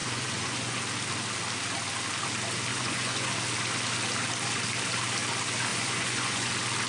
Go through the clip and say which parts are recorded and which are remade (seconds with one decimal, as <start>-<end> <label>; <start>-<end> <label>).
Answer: 0.0-0.8 remade; 0.8-2.7 recorded; 2.7-3.3 remade; 3.3-5.7 recorded; 5.7-6.5 remade; 6.5-6.9 recorded